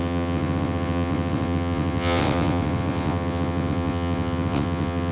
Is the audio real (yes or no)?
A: no